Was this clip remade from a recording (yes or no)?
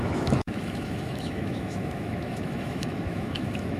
yes